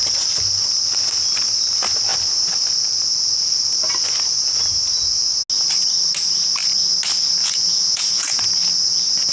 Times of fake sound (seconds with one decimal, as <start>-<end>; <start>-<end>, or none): 7.4-8.4